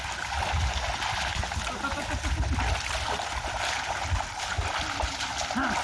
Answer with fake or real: real